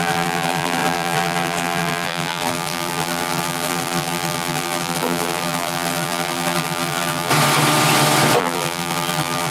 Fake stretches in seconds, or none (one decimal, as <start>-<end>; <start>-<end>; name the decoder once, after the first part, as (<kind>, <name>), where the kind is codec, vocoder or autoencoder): 0.0-7.3 (vocoder, BigVGAN v2); 8.4-9.5

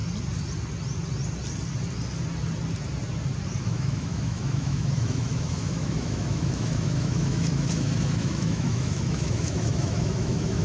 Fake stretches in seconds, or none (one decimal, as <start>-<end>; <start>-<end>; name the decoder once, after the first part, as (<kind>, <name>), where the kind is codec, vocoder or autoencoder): 3.6-10.6 (autoencoder, DAC-VAE)

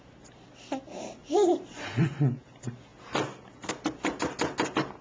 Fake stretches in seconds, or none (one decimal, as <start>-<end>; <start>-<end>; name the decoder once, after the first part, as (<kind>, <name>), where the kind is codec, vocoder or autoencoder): 1.2-2.0 (vocoder, BigVGAN v2)

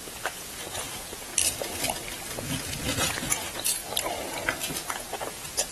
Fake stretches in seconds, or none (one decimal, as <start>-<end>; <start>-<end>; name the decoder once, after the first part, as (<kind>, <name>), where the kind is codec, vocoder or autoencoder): 0.0-1.3 (vocoder, Vocos); 2.7-3.8; 4.8-5.7

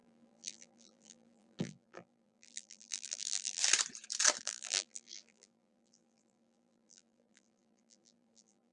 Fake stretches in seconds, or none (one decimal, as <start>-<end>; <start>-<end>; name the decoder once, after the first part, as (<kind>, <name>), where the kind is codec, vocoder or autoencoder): 0.0-3.6 (vocoder, BigVGAN v2); 4.4-8.7

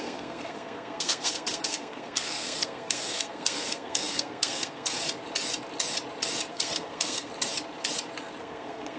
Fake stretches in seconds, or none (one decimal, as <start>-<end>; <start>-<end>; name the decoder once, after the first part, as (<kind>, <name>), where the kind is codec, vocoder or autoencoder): 0.0-5.0 (codec, SNAC); 6.5-7.3; 8.4-9.0

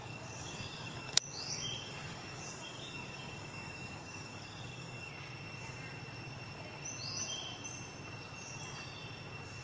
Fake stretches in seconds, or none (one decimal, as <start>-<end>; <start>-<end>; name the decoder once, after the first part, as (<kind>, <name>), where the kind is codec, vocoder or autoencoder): 0.0-5.1 (codec, DAC)

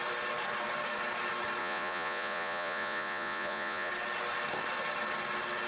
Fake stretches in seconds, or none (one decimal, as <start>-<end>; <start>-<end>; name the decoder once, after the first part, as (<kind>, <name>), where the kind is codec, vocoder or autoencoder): 1.6-3.9 (vocoder, Vocos)